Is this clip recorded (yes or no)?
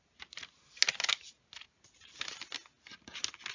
yes